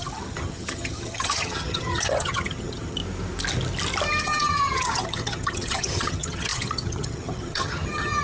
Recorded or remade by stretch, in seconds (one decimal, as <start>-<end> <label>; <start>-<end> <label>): 0.0-3.0 remade; 3.0-4.2 recorded; 4.2-8.2 remade